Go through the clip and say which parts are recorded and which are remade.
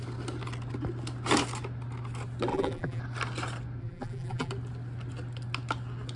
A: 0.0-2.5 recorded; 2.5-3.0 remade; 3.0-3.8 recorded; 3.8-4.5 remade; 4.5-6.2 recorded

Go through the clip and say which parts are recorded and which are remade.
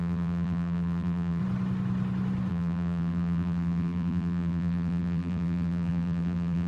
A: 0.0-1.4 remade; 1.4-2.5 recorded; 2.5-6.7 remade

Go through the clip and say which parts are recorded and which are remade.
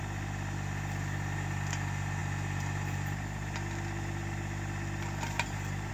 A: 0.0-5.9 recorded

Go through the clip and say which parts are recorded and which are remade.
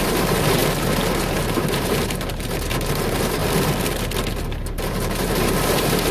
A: 0.0-0.6 remade; 0.6-1.3 recorded; 1.3-3.4 remade; 3.4-4.4 recorded; 4.4-6.1 remade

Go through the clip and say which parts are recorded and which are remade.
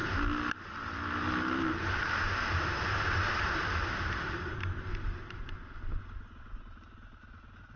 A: 0.0-2.0 recorded; 2.0-7.8 remade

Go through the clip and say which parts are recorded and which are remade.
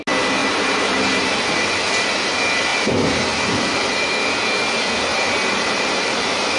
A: 0.0-0.4 recorded; 0.4-1.7 remade; 1.7-2.7 recorded; 2.7-4.1 remade; 4.1-5.1 recorded; 5.1-6.6 remade